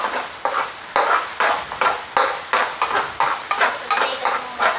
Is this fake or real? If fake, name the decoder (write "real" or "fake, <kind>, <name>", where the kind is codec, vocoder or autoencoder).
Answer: real